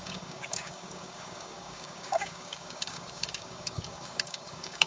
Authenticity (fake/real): fake